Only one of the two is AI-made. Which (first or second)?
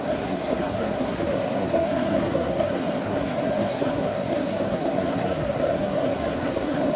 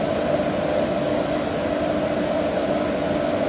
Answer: first